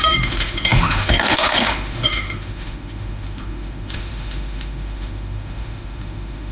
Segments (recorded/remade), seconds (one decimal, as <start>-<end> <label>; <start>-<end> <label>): 0.0-6.5 remade